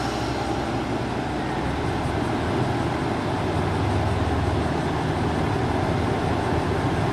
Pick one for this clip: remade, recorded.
recorded